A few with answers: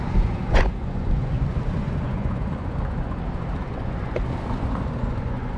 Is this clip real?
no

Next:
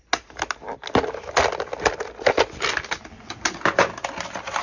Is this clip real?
yes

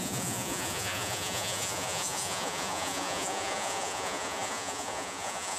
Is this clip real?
no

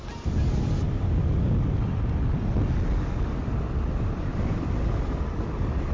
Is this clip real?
yes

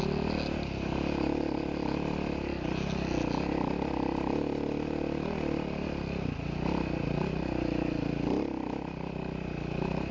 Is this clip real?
yes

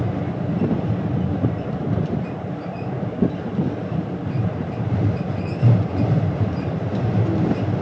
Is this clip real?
yes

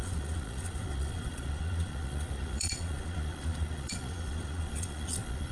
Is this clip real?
no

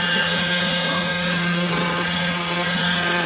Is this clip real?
no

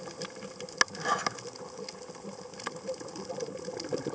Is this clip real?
yes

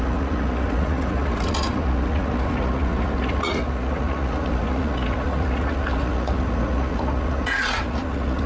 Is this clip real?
no